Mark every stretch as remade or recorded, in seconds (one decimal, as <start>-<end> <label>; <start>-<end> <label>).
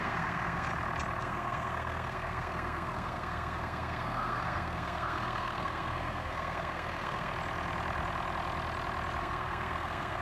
0.0-0.7 remade; 0.7-1.2 recorded; 1.2-7.3 remade; 7.3-9.2 recorded; 9.2-10.2 remade